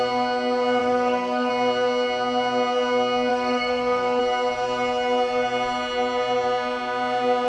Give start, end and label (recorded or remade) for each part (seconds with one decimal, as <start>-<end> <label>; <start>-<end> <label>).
0.0-0.8 recorded; 0.8-1.5 remade; 1.5-3.3 recorded; 3.3-4.2 remade; 4.2-7.5 recorded